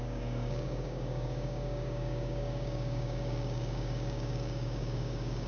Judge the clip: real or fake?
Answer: fake